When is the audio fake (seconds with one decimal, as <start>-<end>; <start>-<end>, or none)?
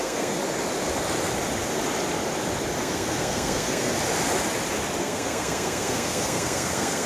0.0-0.4; 2.8-3.9; 5.0-7.1